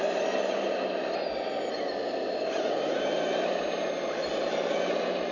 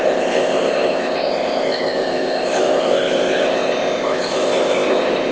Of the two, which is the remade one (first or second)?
second